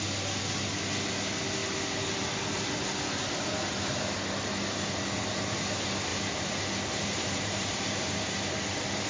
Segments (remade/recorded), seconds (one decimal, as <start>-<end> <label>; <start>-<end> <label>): 0.0-6.1 recorded; 6.1-8.5 remade; 8.5-9.1 recorded

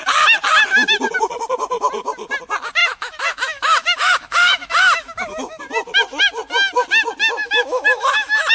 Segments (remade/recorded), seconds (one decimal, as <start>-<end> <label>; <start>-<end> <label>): 0.0-2.8 recorded; 2.8-5.6 remade; 5.6-7.4 recorded; 7.4-8.5 remade

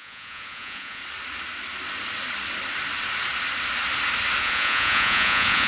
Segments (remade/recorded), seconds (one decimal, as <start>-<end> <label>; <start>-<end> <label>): 0.0-1.0 remade; 1.0-4.4 recorded; 4.4-5.7 remade

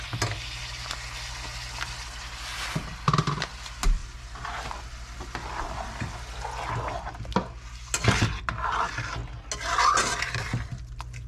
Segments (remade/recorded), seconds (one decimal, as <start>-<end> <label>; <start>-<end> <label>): 0.0-11.3 recorded

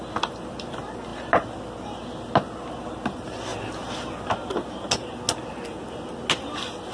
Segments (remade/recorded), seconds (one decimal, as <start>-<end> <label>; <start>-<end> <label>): 0.0-6.9 recorded

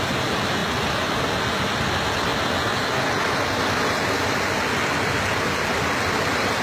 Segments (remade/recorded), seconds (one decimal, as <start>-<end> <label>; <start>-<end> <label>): 0.0-6.6 recorded

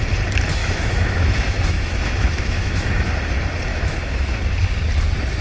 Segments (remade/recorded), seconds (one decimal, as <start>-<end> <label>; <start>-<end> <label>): 0.0-0.6 recorded; 0.6-3.1 remade; 3.1-3.7 recorded; 3.7-4.4 remade; 4.4-5.4 recorded